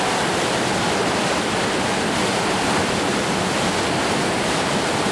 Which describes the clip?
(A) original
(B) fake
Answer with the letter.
A